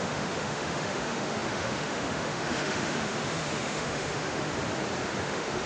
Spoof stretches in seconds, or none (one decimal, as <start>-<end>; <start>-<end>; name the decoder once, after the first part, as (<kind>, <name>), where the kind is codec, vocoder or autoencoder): 0.0-4.5 (autoencoder, DAC-VAE); 5.2-5.7